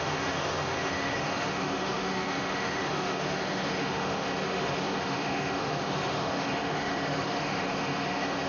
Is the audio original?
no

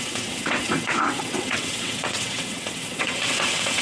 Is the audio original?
no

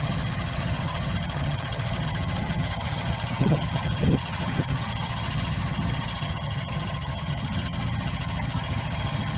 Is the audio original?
no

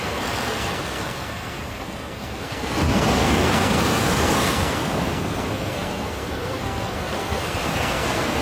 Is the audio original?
no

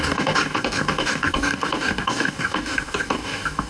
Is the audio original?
no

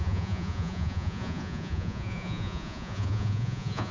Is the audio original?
no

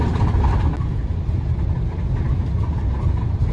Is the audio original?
yes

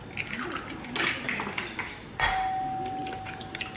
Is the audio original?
yes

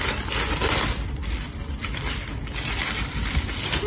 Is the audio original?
yes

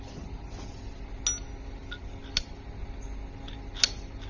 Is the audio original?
yes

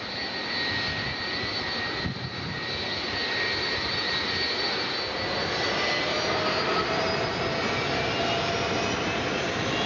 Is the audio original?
yes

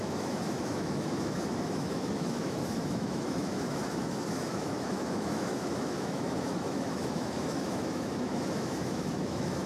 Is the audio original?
no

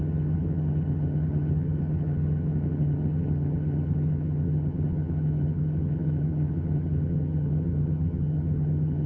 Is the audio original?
no